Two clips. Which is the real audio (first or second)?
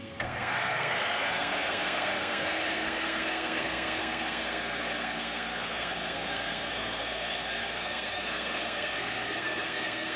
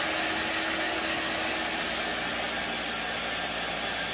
second